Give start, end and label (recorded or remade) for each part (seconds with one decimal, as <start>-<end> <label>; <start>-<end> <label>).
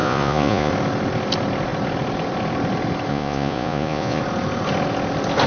0.0-0.7 remade; 0.7-3.1 recorded; 3.1-4.2 remade; 4.2-5.5 recorded